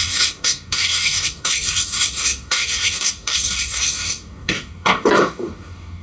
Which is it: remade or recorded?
remade